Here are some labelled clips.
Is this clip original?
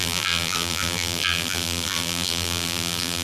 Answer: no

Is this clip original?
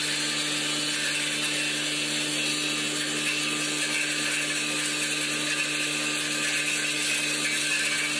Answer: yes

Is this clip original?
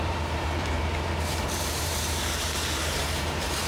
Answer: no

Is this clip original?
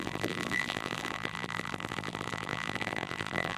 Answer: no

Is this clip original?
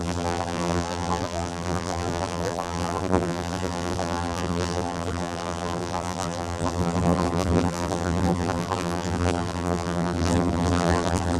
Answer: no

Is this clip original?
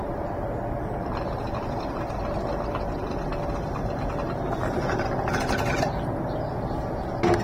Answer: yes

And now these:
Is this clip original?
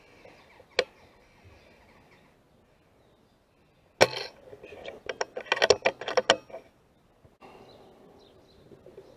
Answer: yes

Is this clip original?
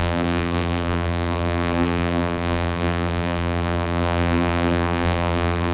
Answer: no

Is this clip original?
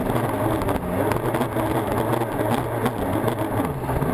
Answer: yes